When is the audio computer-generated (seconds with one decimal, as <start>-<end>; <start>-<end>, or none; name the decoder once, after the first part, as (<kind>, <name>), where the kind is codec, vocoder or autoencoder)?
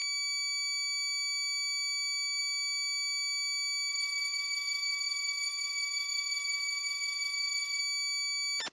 3.9-7.8 (codec, SNAC)